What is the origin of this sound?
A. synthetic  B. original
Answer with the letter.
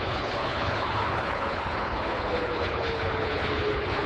A